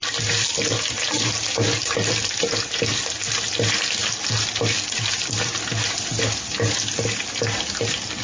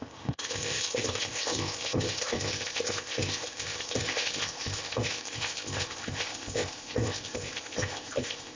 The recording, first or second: first